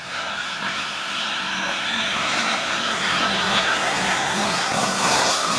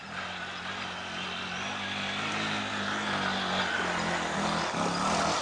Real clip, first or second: second